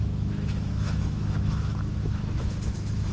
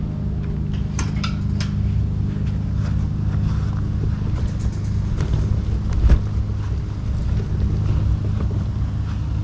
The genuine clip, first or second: second